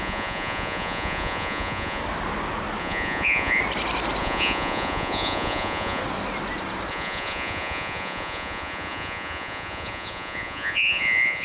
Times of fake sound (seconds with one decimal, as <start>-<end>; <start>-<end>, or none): 0.0-2.0; 2.8-3.6; 4.2-6.0; 6.9-11.4